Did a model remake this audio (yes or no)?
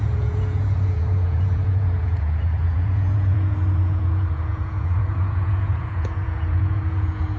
yes